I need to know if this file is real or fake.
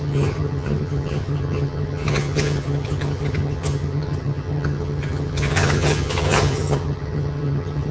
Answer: fake